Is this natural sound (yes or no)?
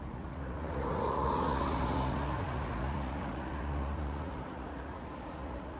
no